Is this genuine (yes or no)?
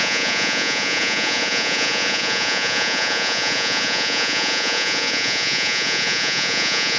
no